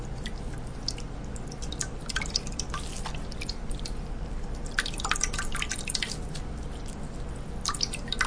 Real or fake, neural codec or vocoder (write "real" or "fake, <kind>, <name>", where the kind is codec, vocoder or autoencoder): real